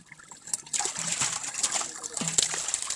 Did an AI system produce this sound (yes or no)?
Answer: no